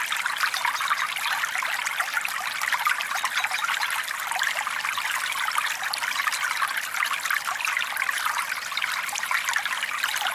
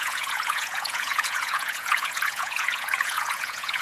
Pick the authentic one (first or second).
first